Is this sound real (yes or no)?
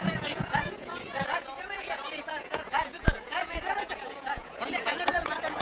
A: no